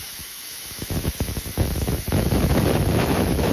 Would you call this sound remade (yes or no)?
yes